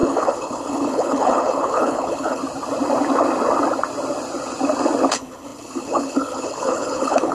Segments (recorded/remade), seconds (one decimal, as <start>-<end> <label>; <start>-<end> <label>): 0.0-2.4 remade; 2.4-5.1 recorded; 5.1-7.3 remade